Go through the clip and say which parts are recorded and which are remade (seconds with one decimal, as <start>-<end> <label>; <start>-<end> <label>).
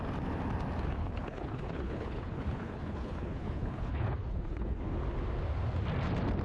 0.0-1.0 recorded; 1.0-4.8 remade; 4.8-6.4 recorded